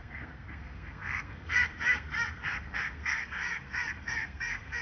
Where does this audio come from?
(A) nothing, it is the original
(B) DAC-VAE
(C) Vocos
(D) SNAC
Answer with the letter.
D